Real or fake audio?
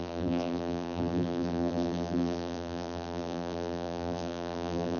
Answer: fake